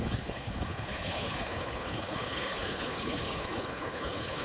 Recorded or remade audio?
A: remade